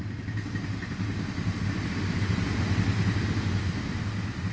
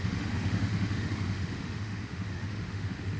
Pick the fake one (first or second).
second